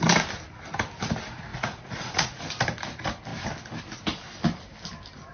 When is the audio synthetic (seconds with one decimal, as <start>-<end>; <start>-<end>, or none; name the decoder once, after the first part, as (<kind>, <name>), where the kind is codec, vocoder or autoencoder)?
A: 1.5-2.4 (vocoder, Vocos)